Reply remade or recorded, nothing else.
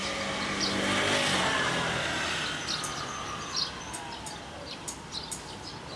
recorded